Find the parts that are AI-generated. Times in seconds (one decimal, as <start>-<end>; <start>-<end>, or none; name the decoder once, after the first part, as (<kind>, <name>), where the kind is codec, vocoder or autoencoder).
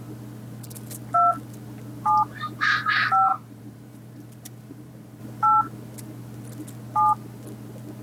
3.3-5.2 (vocoder, BigVGAN v2)